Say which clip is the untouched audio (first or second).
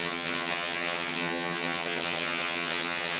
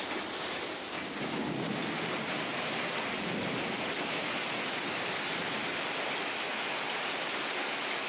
second